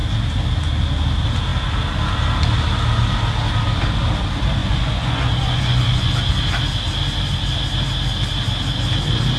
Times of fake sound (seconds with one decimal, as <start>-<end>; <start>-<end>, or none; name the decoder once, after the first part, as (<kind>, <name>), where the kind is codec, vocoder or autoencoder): 4.6-6.1 (vocoder, Vocos)